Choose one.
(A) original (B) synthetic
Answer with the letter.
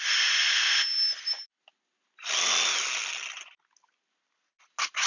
A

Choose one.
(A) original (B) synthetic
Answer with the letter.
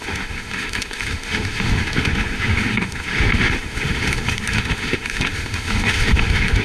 B